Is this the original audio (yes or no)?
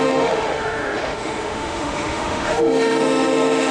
no